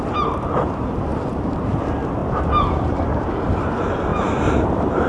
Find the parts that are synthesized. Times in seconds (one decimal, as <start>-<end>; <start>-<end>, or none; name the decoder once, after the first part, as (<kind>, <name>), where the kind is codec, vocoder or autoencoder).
1.1-1.8 (vocoder, BigVGAN v2); 2.2-3.3; 4.1-5.1